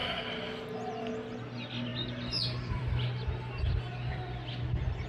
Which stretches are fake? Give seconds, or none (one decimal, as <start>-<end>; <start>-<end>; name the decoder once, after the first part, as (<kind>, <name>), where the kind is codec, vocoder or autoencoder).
0.0-0.6 (vocoder, BigVGAN v2); 1.9-5.1